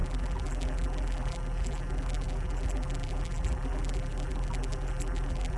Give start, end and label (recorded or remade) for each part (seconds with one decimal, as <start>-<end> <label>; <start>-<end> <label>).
0.0-5.6 remade